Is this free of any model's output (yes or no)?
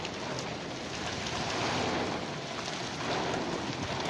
yes